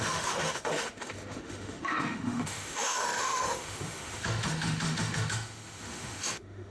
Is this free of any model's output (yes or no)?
no